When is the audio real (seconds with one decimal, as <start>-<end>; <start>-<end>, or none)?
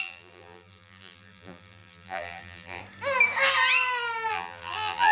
2.8-4.3